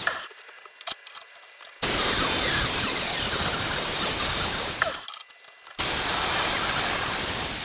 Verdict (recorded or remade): recorded